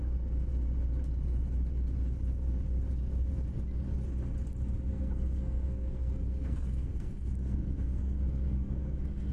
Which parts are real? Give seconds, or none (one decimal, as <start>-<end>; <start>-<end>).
0.0-4.9